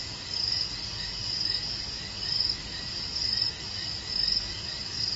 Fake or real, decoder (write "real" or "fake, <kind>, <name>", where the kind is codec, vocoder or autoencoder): real